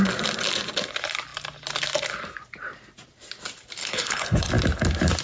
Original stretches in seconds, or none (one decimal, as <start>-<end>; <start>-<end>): 0.0-3.8; 4.5-5.2